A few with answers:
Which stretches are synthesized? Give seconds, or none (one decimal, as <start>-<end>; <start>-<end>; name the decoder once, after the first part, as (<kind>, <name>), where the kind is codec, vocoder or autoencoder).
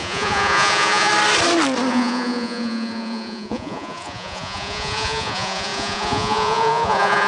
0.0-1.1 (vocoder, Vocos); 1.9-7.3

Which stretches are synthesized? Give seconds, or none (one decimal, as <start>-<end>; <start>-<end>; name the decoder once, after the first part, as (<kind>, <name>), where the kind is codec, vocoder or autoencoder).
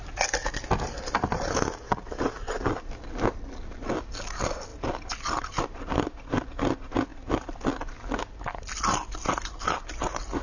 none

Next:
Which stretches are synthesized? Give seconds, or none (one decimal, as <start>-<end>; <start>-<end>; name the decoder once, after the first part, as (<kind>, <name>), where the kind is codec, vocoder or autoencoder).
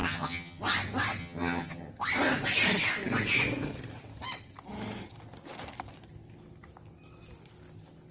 0.0-0.6 (vocoder, HiFi-GAN); 1.2-1.9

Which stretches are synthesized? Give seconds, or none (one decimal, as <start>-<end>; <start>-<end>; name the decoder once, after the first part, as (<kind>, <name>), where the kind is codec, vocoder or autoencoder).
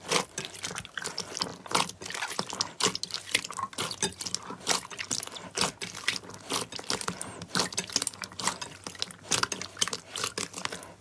none